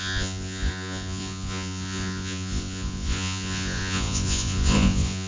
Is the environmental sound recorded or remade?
remade